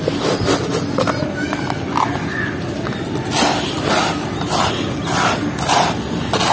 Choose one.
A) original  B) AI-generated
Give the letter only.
A